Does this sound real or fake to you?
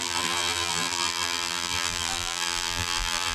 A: fake